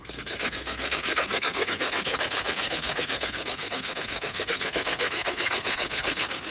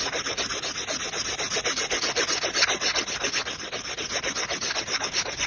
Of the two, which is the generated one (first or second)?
first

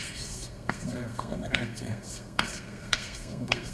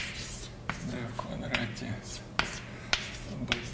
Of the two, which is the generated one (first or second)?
first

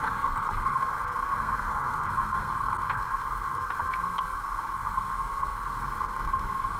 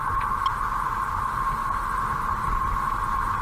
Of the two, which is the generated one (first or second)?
first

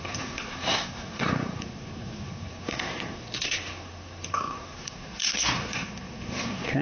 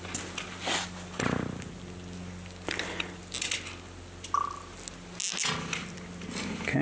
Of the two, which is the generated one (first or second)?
first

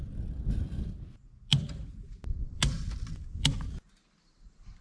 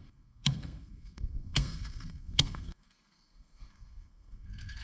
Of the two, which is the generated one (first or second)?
second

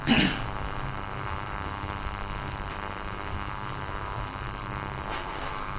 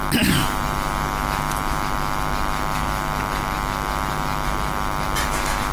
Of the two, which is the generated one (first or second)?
first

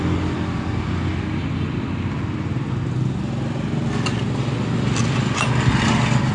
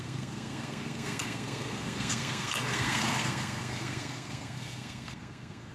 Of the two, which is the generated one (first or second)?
second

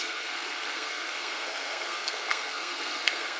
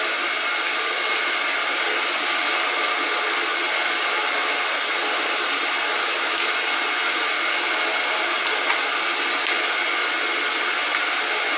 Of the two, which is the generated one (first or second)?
first